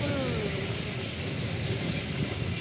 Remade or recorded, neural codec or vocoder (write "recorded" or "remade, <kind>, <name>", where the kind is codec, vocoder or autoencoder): recorded